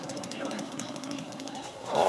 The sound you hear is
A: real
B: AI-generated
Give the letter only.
B